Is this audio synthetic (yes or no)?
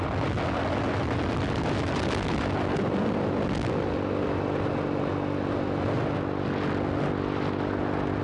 no